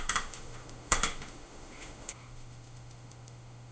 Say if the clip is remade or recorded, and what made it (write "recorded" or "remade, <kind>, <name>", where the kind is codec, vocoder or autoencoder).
remade, autoencoder, DAC-VAE